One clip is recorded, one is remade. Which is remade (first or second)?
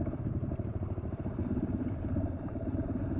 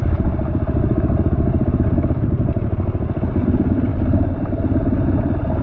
first